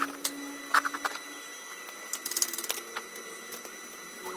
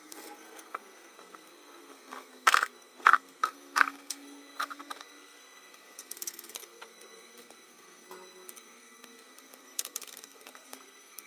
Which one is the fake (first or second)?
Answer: second